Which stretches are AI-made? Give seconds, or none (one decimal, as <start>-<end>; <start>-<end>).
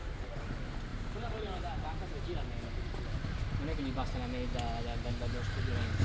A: 0.9-1.7